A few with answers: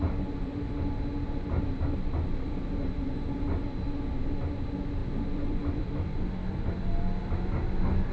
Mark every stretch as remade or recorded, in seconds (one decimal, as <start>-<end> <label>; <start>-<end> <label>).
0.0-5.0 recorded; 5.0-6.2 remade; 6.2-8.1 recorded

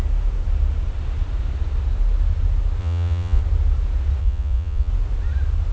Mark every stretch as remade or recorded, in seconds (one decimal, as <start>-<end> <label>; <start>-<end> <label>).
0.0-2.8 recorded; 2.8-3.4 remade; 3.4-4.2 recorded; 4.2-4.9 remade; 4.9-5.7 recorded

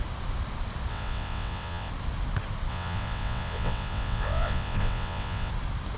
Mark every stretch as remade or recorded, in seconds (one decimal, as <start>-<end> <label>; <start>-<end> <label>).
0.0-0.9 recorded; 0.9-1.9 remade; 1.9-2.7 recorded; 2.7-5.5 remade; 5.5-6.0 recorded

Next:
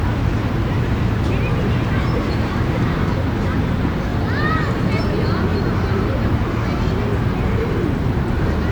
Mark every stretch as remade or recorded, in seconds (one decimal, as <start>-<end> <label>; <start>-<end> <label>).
0.0-2.5 remade; 2.5-4.1 recorded; 4.1-4.8 remade; 4.8-5.5 recorded; 5.5-6.6 remade; 6.6-8.7 recorded

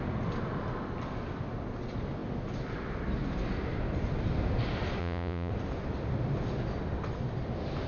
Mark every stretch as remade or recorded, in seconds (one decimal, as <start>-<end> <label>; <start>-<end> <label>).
0.0-5.0 recorded; 5.0-5.5 remade; 5.5-7.9 recorded

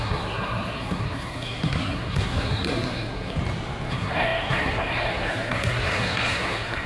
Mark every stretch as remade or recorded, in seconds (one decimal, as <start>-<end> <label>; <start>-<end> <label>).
0.0-3.4 remade; 3.4-3.9 recorded; 3.9-6.9 remade